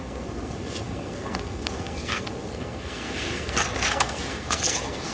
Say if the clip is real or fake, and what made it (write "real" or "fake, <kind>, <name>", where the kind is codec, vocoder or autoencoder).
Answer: fake, codec, SNAC